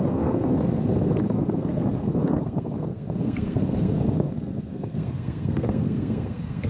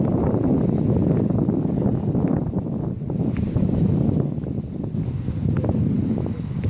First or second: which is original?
second